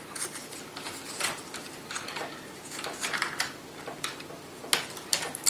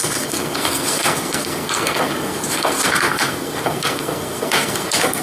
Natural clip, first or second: first